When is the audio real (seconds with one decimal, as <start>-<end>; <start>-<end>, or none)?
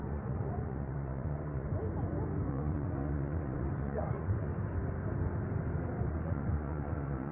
1.8-2.5; 4.5-6.0